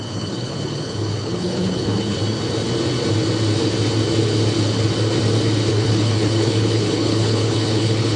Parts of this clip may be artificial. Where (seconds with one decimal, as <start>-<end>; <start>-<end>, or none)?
0.0-2.2; 5.7-8.2